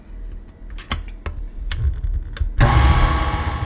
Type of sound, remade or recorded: recorded